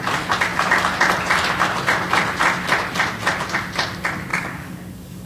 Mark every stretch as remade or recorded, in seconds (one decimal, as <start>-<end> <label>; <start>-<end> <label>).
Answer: 0.0-4.3 recorded; 4.3-5.3 remade